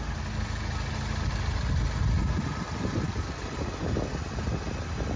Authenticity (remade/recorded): recorded